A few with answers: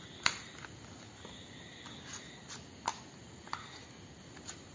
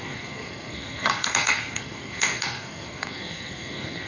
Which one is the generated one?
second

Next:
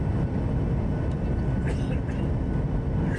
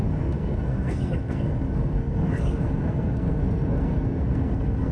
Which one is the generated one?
second